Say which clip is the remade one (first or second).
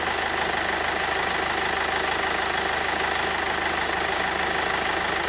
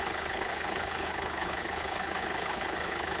second